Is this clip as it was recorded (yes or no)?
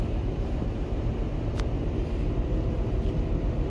yes